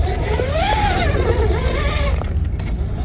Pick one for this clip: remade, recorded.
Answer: recorded